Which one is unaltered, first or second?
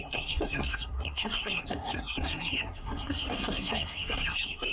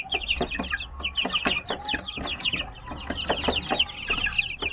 second